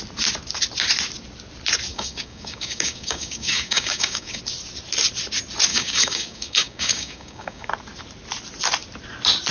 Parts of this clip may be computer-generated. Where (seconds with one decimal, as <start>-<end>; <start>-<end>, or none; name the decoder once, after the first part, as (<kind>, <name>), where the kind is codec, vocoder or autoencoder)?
1.9-4.4 (codec, DAC); 5.7-7.7